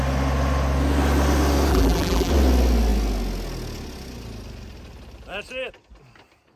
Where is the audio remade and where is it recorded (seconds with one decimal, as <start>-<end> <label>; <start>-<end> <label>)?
0.0-1.7 recorded; 1.7-2.3 remade; 2.3-6.6 recorded